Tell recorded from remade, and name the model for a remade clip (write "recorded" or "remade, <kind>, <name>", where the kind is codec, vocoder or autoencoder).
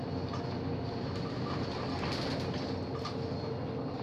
recorded